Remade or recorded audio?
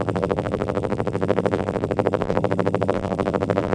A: remade